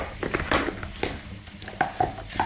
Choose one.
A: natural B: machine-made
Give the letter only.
A